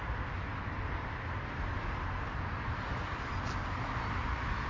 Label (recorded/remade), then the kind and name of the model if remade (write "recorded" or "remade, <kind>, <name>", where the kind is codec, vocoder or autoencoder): recorded